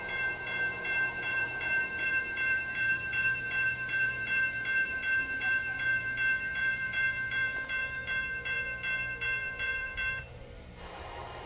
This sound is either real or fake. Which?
fake